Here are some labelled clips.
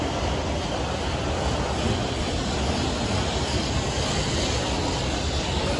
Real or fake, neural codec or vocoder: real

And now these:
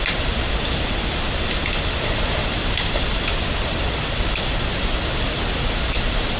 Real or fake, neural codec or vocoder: real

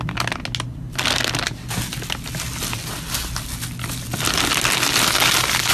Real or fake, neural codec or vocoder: real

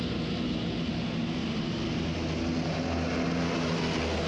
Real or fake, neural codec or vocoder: real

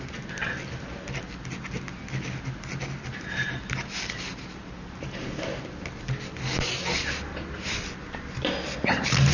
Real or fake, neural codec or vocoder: real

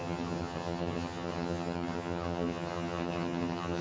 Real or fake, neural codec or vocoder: fake, vocoder, HiFi-GAN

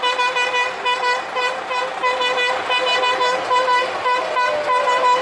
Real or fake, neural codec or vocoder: real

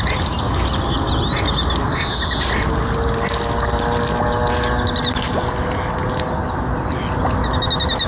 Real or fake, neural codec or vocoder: real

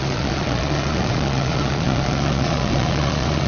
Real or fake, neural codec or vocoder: fake, vocoder, Vocos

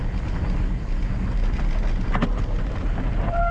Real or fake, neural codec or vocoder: real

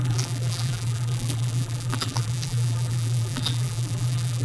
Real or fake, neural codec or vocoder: fake, vocoder, BigVGAN v2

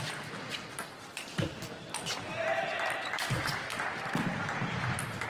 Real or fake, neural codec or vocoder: real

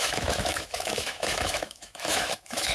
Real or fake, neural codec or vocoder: fake, autoencoder, DAC-VAE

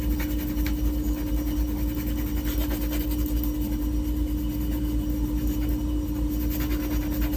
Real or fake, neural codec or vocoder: real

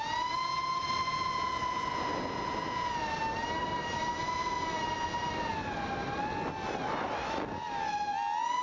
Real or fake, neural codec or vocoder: real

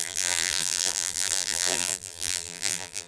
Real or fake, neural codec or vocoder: fake, vocoder, BigVGAN v2